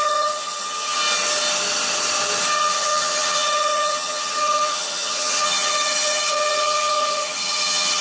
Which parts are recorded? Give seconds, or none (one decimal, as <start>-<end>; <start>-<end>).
1.0-2.5